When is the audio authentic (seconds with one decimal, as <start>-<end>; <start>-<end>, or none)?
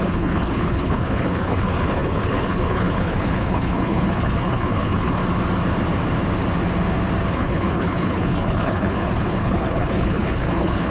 5.2-7.3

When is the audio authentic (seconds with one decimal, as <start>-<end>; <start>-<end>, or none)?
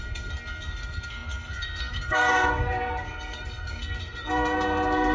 none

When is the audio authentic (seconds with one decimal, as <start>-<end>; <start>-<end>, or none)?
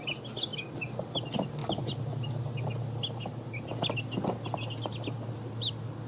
0.0-6.1